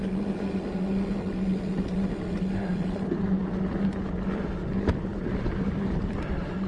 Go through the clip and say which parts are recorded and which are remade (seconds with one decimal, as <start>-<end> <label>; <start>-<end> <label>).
0.0-6.7 recorded